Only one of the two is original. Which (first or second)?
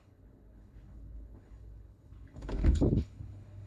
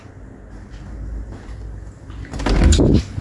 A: second